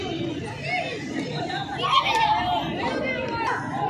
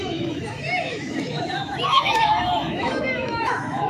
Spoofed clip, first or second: second